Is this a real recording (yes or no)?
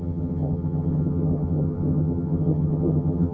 no